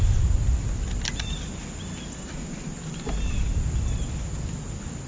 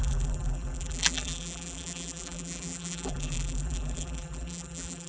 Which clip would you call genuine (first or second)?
first